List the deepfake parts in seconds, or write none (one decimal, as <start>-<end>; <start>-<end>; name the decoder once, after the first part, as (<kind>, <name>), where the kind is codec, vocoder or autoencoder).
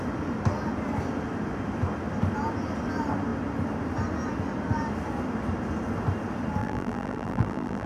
6.6-7.9 (vocoder, BigVGAN v2)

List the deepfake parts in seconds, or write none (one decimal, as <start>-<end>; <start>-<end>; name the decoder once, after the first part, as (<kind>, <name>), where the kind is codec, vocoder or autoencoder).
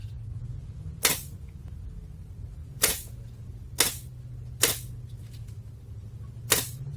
0.0-1.0 (vocoder, Vocos); 2.6-3.6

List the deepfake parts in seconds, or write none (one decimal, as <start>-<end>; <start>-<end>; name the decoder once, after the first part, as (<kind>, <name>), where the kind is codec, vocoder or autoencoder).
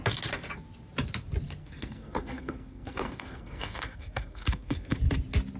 1.6-5.0 (codec, SNAC)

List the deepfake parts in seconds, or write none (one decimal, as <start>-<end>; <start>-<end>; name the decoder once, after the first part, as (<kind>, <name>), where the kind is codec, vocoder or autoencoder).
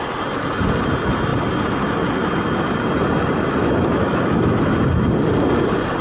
3.6-4.6 (autoencoder, DAC-VAE)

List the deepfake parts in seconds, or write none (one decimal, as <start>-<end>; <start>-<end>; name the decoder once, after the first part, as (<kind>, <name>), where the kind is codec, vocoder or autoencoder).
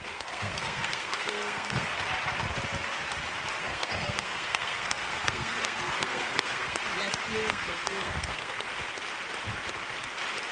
0.0-1.9 (codec, SNAC); 3.6-6.9; 7.5-8.8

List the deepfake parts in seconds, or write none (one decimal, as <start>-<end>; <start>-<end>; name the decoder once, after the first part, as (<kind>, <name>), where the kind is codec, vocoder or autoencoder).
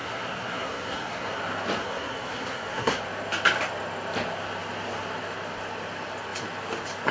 0.0-1.4 (codec, SNAC); 1.8-3.0